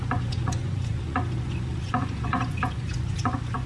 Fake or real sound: fake